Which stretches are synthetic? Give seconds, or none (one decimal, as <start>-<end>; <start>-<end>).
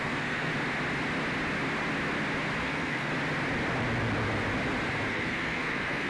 0.0-0.5; 2.6-3.1; 5.1-6.1